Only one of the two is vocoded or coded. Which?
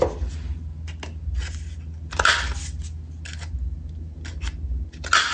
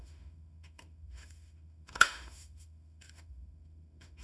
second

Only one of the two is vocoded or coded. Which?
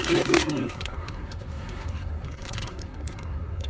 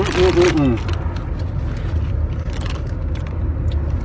first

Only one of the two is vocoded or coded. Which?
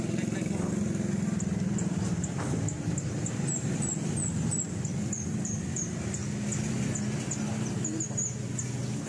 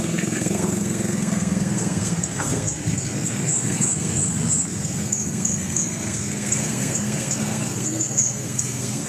second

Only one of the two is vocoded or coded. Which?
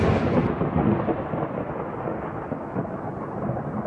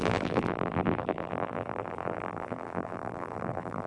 second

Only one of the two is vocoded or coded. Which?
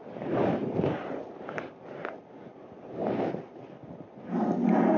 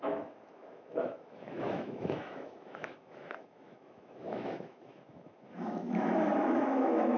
second